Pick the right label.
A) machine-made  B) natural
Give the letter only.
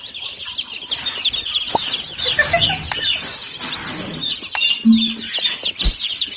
B